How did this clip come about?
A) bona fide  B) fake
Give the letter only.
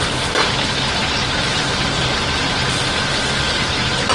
B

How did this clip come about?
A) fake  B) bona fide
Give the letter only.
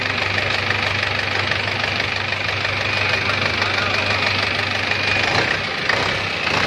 B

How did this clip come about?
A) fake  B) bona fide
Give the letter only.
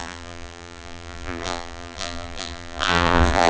A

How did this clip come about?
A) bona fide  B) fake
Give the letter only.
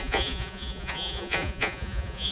B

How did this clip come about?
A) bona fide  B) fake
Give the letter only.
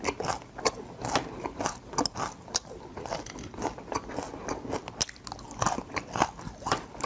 A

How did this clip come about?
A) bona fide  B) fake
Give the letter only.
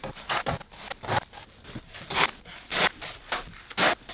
A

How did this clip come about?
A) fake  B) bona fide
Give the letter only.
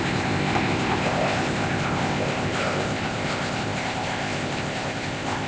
A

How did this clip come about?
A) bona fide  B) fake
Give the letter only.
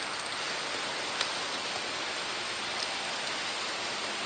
A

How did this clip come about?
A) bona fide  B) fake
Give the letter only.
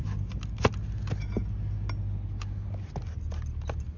A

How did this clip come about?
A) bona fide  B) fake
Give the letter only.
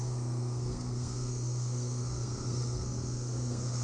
B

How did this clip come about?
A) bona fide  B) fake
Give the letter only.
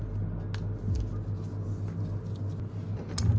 A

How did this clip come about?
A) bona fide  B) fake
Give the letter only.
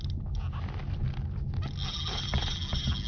A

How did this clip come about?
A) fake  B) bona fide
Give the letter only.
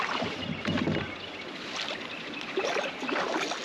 B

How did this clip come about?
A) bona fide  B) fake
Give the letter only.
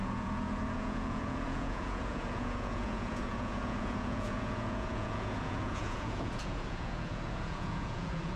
B